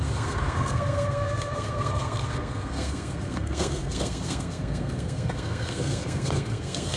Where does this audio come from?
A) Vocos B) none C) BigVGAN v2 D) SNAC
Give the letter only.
D